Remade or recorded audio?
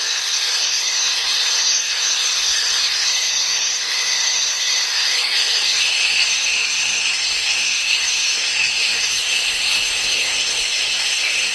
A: remade